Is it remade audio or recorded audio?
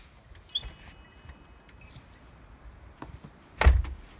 recorded